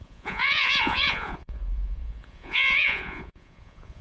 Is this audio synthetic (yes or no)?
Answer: yes